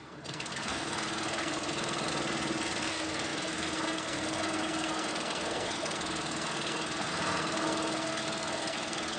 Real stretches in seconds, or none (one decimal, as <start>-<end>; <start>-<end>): 2.1-2.8